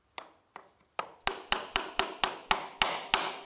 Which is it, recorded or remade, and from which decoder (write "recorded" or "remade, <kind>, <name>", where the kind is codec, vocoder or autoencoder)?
recorded